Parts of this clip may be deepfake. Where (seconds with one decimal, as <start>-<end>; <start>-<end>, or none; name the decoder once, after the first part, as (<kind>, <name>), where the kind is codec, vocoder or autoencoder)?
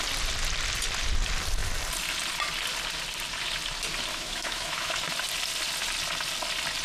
4.1-4.9 (autoencoder, DAC-VAE)